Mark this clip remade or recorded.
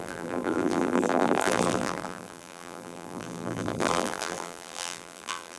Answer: remade